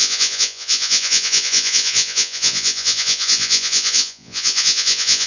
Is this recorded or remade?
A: remade